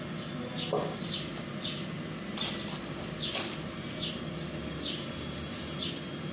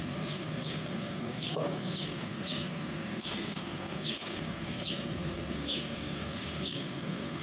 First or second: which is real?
first